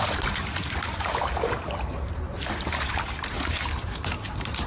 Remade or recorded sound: remade